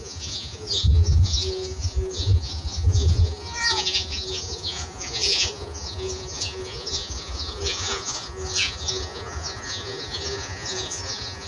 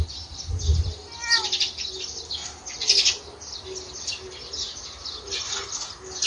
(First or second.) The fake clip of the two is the first